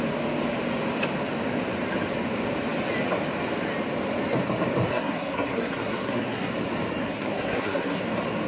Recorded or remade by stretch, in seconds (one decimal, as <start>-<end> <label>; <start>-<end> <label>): 0.0-4.9 recorded; 4.9-6.5 remade; 6.5-7.0 recorded; 7.0-8.0 remade; 8.0-8.5 recorded